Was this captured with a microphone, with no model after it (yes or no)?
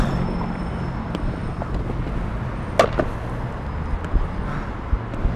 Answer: yes